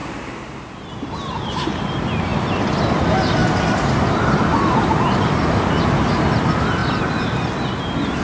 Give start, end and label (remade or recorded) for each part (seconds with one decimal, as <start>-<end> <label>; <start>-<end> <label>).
0.0-0.9 remade; 0.9-3.4 recorded; 3.4-4.1 remade; 4.1-6.8 recorded; 6.8-7.4 remade; 7.4-8.2 recorded